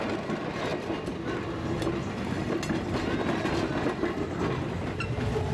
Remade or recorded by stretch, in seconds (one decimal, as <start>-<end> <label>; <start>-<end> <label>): 0.0-5.5 recorded